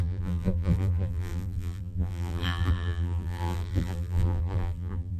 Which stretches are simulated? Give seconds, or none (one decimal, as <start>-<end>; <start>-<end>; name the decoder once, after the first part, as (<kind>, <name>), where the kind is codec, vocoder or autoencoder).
0.0-5.2 (vocoder, BigVGAN v2)